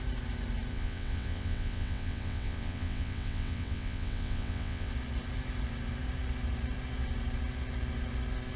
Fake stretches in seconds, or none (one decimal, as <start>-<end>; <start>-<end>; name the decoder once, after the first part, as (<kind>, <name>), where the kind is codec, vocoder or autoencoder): 0.7-4.9 (vocoder, WaveNeXt)